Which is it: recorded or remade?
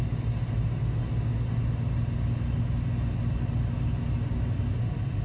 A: recorded